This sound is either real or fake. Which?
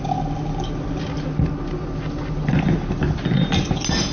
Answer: real